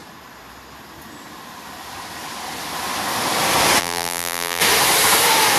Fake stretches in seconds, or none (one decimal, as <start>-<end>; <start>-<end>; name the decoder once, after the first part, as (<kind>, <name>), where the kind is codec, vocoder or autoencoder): 3.8-4.6 (vocoder, BigVGAN v2)